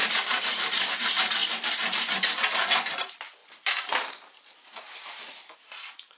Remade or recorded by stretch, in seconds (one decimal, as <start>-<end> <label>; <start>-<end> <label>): 0.0-1.4 remade; 1.4-2.9 recorded; 2.9-6.2 remade